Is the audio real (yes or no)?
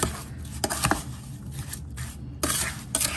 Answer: yes